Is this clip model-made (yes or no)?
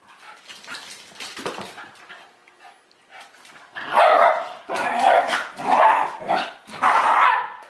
no